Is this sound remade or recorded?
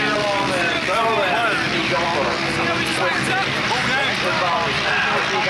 recorded